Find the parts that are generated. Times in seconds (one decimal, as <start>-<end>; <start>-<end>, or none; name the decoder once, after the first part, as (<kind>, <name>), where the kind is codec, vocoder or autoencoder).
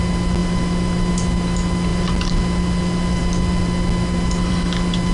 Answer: 0.4-1.1 (vocoder, BigVGAN v2); 1.9-2.4